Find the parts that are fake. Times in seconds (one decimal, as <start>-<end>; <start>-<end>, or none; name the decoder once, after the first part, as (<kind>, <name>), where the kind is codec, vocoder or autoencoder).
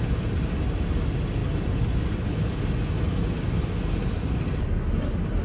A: none